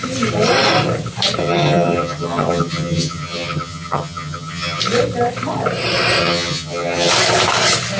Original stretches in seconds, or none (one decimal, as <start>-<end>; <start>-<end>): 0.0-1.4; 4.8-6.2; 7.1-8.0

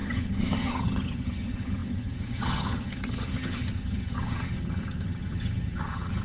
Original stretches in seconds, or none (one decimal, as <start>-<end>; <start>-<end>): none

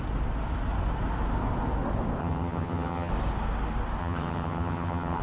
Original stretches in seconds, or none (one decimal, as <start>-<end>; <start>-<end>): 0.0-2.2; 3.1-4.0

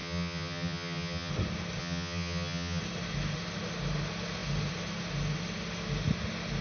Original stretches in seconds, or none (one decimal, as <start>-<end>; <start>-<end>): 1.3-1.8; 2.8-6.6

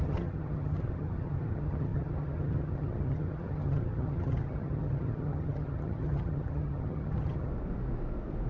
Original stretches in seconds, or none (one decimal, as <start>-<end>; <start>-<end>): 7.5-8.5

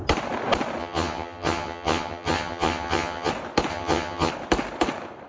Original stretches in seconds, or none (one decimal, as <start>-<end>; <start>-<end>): 0.0-0.8; 3.3-3.7; 4.3-5.3

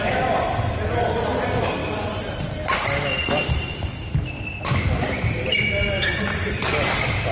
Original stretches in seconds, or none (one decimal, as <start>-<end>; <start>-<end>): 0.0-7.3

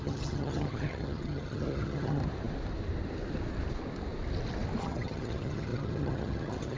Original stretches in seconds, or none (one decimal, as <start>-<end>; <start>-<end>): 2.2-4.8